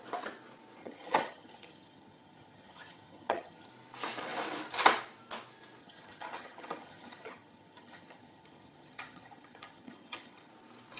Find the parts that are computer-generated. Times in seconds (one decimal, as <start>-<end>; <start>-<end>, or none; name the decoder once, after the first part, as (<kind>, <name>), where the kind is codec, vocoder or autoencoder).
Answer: 0.8-3.7 (vocoder, HiFi-GAN); 5.8-10.5